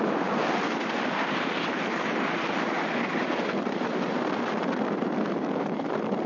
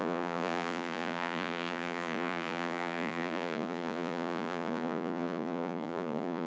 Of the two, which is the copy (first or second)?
second